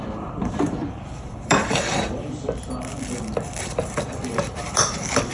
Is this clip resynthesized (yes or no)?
yes